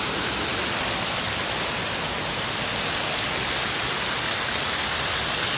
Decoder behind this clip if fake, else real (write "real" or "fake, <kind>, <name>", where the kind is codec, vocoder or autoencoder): real